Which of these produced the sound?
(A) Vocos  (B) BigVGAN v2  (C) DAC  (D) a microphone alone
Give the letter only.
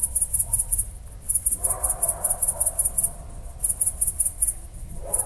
D